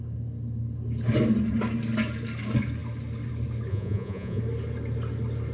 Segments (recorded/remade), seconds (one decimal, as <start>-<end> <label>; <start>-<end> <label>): 0.0-3.7 recorded; 3.7-4.4 remade; 4.4-5.5 recorded